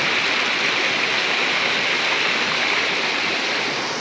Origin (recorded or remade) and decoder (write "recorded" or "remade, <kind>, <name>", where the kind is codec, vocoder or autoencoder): recorded